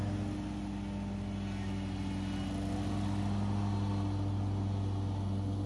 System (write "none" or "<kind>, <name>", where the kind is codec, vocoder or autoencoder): none